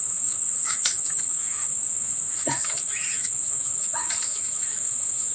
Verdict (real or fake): fake